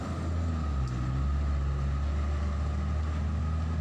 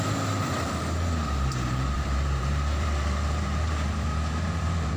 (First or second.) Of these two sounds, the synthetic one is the second